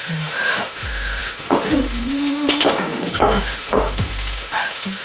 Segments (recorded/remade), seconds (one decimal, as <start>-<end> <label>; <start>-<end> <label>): 0.0-5.0 remade